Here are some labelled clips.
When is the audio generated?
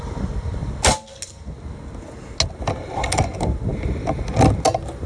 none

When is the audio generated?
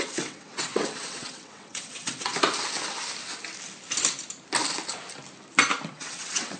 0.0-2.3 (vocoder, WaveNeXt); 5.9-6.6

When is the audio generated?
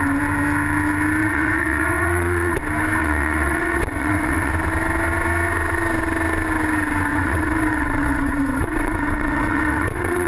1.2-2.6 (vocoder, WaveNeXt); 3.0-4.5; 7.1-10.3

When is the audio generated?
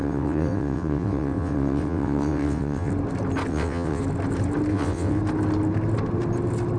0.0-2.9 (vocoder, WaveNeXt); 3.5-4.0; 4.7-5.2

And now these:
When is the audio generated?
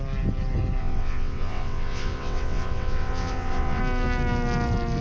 0.8-3.8 (vocoder, WaveNeXt)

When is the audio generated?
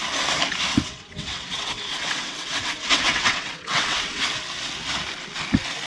0.7-4.2 (vocoder, WaveNeXt)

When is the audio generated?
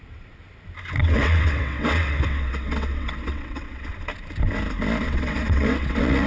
0.0-0.4 (vocoder, WaveNeXt); 1.0-3.9; 5.0-6.3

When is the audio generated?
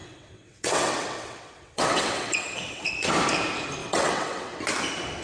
0.0-3.1 (vocoder, WaveNeXt); 3.8-4.6